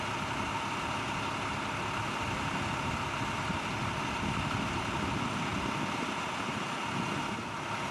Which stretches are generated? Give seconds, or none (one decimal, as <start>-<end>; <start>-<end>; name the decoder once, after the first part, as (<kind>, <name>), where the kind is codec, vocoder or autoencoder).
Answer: none